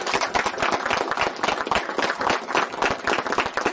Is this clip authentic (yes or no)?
yes